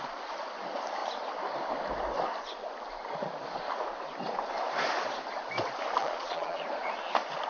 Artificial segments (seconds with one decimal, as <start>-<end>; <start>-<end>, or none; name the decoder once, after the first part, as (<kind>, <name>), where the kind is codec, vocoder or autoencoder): 6.0-6.6 (vocoder, Vocos)